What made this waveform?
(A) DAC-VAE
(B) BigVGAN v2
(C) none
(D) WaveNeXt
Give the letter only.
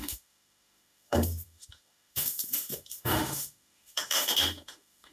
A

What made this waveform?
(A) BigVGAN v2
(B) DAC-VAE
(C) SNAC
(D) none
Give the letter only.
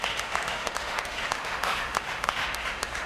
B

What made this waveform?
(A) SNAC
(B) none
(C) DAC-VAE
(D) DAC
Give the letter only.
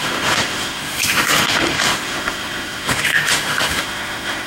C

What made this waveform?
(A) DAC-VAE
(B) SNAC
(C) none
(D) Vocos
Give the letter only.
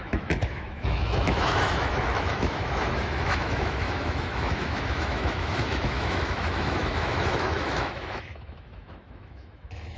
A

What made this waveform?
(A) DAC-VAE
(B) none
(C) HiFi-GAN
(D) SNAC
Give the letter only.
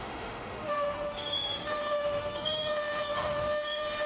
A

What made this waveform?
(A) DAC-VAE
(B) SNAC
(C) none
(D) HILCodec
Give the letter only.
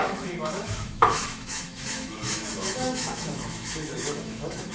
A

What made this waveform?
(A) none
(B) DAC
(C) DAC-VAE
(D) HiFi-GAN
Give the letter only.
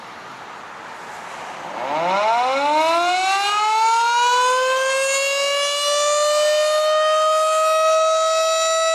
A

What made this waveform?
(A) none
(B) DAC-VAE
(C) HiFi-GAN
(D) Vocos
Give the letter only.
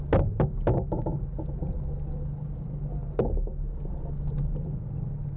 A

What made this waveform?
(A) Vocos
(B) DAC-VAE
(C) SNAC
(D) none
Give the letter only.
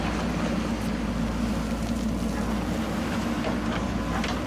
D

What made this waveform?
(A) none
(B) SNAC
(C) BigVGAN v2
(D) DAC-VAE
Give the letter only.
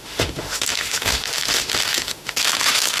D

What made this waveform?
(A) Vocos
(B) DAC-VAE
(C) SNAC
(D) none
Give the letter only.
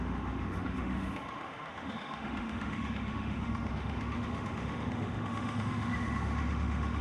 B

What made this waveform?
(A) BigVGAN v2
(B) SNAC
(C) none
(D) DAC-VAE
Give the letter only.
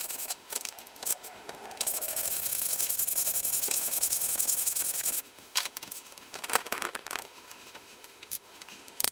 D